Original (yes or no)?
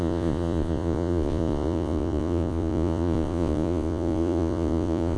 no